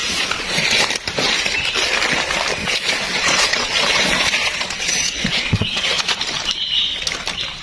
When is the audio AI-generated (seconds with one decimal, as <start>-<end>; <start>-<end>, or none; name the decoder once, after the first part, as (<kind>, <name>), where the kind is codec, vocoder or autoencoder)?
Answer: 0.0-0.6 (vocoder, Vocos); 2.6-6.2